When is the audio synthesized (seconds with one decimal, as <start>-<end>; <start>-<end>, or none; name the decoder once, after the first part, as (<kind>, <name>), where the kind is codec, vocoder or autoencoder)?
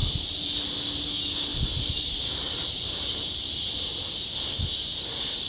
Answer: 0.0-0.6 (vocoder, BigVGAN v2); 1.5-3.6